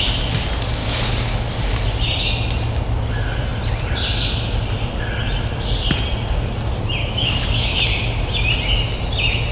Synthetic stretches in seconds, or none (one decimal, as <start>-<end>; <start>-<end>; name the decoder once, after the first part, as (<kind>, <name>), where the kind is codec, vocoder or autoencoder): 0.8-1.5 (codec, DAC); 7.0-7.8